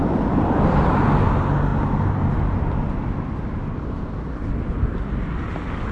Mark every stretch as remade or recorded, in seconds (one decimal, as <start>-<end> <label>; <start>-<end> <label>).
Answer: 0.0-5.9 recorded